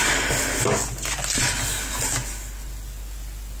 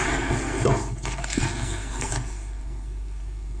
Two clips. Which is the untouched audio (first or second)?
first